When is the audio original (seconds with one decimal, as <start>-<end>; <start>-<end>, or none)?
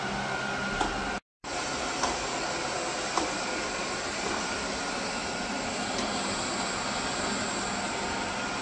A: 0.0-8.6